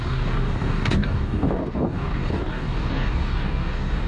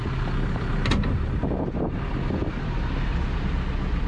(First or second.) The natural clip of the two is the second